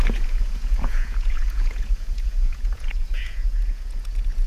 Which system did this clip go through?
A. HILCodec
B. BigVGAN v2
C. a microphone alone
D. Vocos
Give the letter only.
D